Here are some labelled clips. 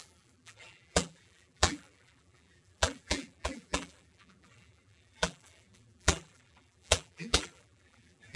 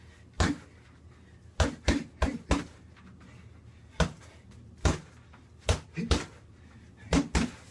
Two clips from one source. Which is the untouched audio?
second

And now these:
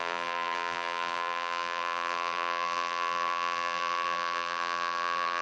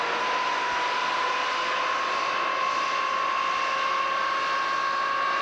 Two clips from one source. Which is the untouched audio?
second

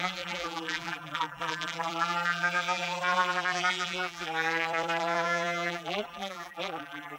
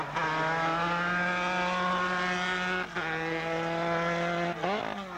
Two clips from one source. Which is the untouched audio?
second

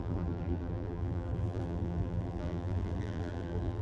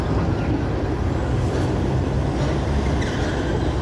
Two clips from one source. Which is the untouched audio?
second